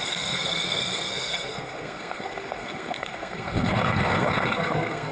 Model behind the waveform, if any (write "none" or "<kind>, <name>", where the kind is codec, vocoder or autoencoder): codec, SNAC